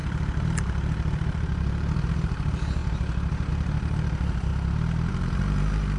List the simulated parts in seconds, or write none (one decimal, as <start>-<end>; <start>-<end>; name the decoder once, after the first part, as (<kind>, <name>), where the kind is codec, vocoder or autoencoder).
0.0-2.8 (vocoder, BigVGAN v2); 3.5-4.5; 5.1-6.0

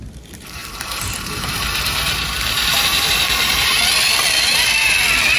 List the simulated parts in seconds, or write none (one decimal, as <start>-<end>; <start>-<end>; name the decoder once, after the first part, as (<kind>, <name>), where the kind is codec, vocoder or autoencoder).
0.6-3.8 (vocoder, BigVGAN v2)

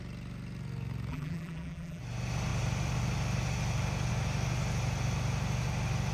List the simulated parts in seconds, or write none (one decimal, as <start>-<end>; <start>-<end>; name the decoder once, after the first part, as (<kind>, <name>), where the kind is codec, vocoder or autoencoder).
1.1-2.0 (vocoder, BigVGAN v2)

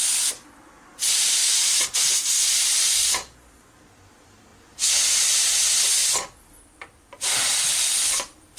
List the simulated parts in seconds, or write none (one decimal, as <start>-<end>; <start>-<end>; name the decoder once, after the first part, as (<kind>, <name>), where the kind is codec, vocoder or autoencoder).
0.0-1.4 (vocoder, BigVGAN v2); 2.9-4.5; 5.0-6.0; 7.1-8.6

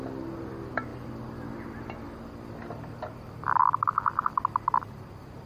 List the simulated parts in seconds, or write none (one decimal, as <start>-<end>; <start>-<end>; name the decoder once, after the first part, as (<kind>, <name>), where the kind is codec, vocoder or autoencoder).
none

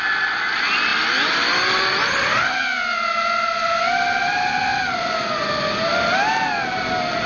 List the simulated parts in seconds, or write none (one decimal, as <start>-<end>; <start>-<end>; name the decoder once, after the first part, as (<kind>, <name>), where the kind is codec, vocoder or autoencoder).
none

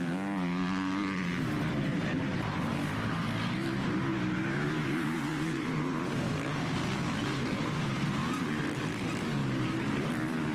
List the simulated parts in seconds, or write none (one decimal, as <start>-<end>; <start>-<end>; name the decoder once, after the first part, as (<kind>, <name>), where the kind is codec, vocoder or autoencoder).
1.9-6.3 (vocoder, BigVGAN v2); 7.2-8.6; 9.4-10.1